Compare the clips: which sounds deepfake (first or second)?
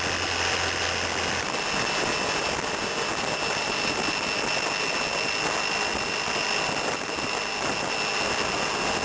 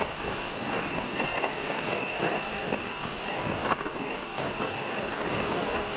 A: second